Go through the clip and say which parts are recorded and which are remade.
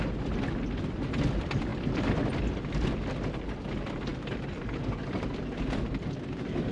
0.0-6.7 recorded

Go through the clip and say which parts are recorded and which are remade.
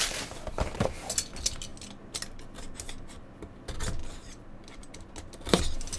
0.0-4.0 recorded; 4.0-5.1 remade; 5.1-6.0 recorded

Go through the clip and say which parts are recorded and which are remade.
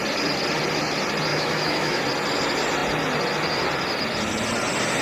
0.0-1.3 recorded; 1.3-2.0 remade; 2.0-5.0 recorded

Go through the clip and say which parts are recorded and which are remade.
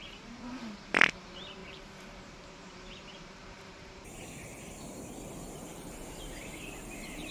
0.0-7.3 remade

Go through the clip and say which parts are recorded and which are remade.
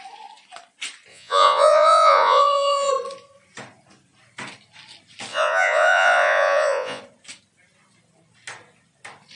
0.0-1.1 recorded; 1.1-2.9 remade; 2.9-5.3 recorded; 5.3-7.0 remade; 7.0-9.4 recorded